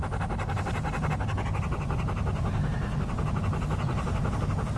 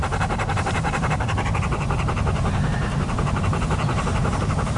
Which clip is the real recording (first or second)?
first